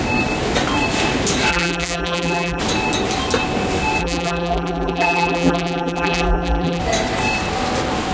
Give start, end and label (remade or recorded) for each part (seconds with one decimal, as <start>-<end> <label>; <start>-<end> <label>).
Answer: 0.0-1.5 recorded; 1.5-2.6 remade; 2.6-4.0 recorded; 4.0-6.8 remade; 6.8-8.1 recorded